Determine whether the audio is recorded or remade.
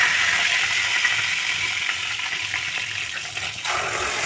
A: recorded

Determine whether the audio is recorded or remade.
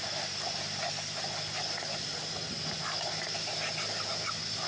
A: recorded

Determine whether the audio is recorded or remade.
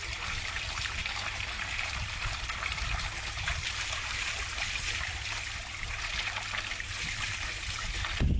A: remade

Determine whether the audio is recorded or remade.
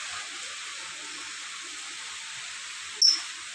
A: recorded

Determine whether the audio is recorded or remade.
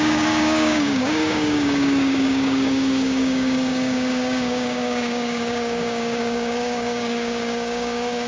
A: remade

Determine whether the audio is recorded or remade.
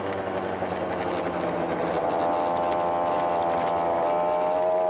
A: recorded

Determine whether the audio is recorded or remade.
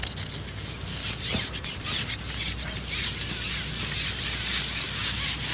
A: recorded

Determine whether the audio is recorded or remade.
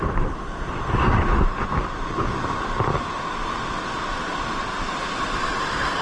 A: recorded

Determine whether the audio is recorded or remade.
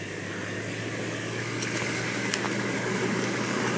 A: remade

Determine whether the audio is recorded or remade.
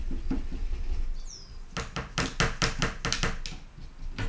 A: recorded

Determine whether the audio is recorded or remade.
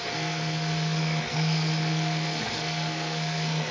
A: remade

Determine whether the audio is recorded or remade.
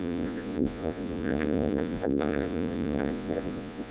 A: remade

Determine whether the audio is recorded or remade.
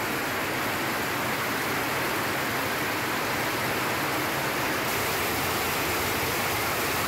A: recorded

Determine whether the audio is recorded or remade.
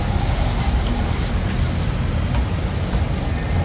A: recorded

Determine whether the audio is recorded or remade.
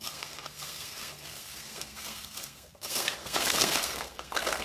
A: remade